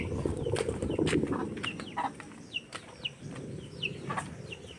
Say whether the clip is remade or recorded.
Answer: remade